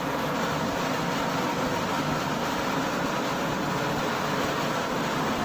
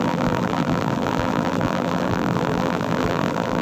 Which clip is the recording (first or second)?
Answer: first